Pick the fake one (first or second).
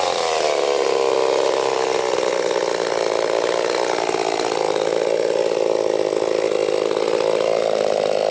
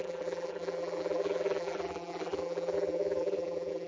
second